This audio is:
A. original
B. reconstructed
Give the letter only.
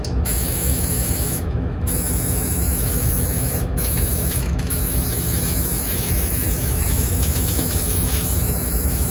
B